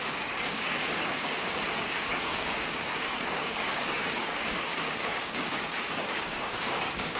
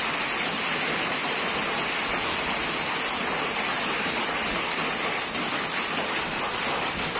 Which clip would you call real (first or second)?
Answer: second